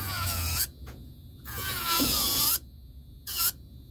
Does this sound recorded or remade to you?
remade